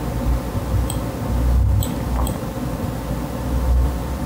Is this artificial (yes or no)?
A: no